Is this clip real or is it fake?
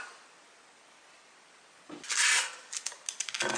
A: real